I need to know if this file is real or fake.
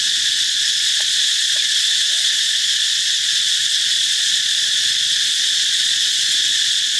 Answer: fake